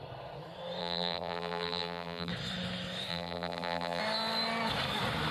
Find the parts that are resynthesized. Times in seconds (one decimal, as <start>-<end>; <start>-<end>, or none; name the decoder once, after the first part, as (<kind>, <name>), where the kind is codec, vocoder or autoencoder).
0.8-2.3 (vocoder, BigVGAN v2); 3.1-4.0